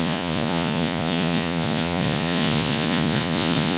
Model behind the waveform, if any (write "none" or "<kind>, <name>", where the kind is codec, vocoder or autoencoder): vocoder, Vocos